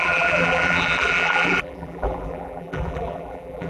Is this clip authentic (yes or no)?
no